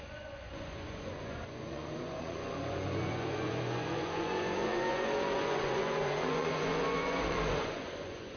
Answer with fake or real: fake